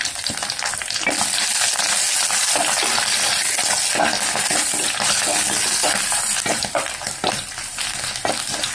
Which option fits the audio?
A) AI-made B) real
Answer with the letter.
B